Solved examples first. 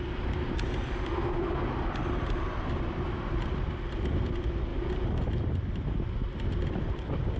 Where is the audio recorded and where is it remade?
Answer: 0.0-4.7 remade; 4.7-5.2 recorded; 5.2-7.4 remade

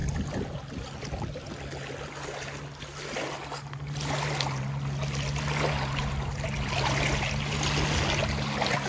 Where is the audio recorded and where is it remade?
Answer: 0.0-8.9 recorded

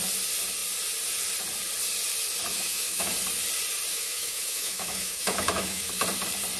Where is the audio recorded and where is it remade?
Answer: 0.0-2.5 recorded; 2.5-3.1 remade; 3.1-3.9 recorded; 3.9-5.9 remade; 5.9-6.6 recorded